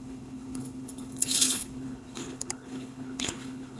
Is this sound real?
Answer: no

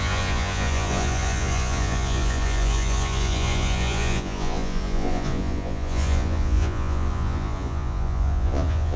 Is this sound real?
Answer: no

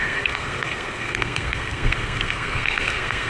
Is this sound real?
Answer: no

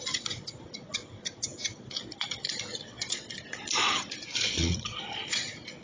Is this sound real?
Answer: no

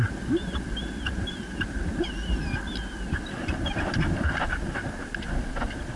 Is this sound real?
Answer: no